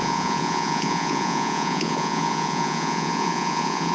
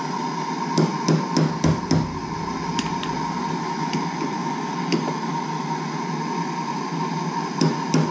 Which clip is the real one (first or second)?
second